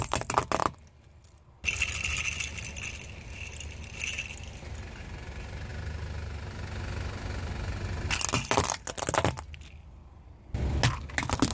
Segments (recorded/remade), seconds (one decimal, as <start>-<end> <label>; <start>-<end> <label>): 0.0-11.5 recorded